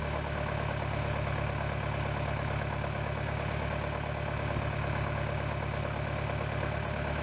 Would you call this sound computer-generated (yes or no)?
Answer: no